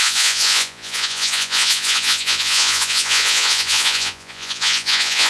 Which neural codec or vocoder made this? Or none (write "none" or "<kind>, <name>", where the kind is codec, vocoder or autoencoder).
vocoder, Vocos